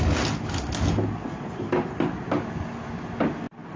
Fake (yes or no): no